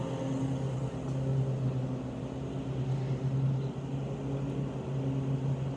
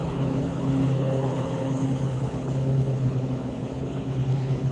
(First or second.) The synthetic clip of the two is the second